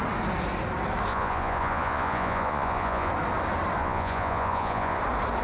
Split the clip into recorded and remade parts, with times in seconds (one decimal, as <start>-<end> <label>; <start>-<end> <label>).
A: 0.0-1.1 recorded; 1.1-3.1 remade; 3.1-3.8 recorded; 3.8-5.0 remade; 5.0-5.4 recorded